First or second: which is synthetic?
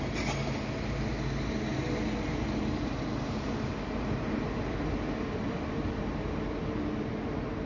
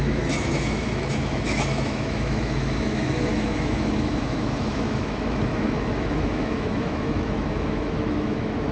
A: second